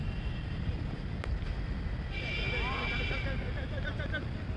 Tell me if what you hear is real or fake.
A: real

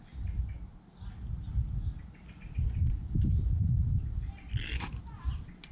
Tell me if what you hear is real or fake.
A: real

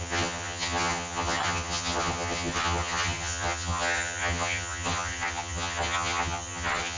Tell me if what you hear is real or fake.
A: fake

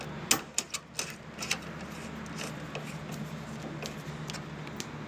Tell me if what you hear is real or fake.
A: real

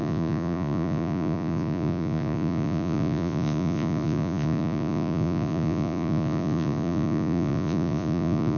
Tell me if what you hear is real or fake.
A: fake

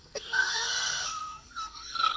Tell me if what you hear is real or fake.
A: fake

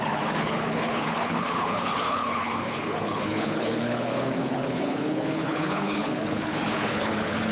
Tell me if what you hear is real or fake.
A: fake